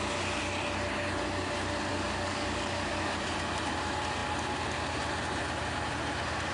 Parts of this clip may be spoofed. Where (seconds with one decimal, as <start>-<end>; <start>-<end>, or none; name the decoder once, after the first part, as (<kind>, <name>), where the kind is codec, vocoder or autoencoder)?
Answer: 1.9-3.2 (codec, DAC)